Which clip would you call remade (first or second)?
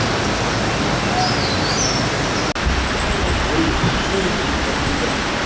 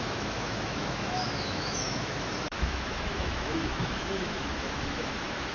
second